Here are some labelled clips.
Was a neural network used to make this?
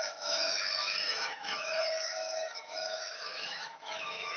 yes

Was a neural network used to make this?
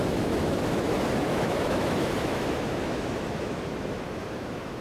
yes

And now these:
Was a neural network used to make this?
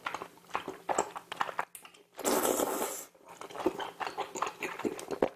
no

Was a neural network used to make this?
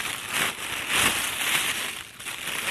no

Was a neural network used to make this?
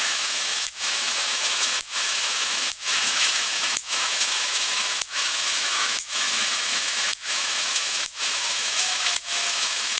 yes